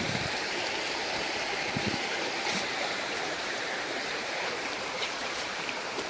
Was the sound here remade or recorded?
remade